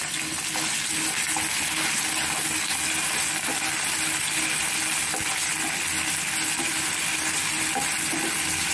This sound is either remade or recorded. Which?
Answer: recorded